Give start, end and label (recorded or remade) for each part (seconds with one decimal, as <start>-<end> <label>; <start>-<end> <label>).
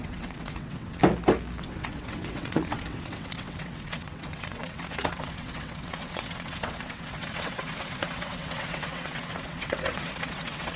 0.0-1.0 remade; 1.0-1.6 recorded; 1.6-10.8 remade